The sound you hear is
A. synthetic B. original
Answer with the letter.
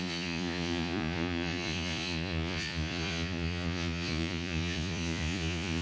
A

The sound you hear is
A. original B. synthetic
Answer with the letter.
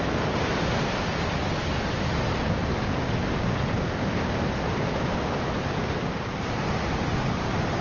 A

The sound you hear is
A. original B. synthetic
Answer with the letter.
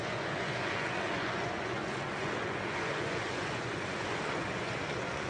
B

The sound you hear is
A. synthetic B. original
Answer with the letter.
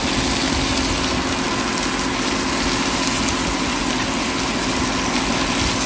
B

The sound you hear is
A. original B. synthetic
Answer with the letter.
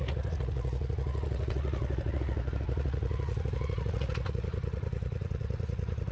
B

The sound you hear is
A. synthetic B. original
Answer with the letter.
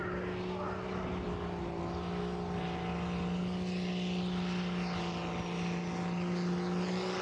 B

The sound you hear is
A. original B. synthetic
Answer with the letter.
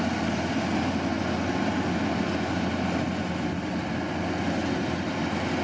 A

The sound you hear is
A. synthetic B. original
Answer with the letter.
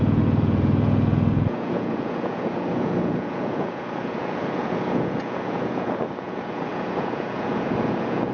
A